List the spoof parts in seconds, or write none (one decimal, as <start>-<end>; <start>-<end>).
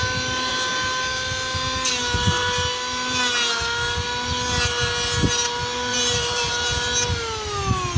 5.9-6.5